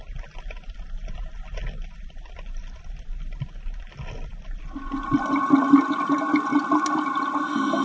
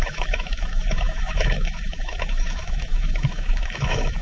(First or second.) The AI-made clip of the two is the second